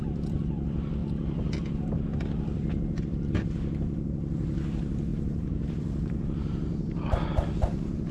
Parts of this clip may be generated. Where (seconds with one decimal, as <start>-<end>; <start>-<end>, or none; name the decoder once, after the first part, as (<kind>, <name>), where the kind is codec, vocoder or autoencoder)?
5.1-8.1 (vocoder, BigVGAN v2)